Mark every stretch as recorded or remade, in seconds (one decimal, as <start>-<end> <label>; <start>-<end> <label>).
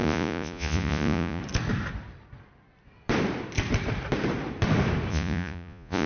0.0-1.4 remade; 1.4-5.1 recorded; 5.1-6.1 remade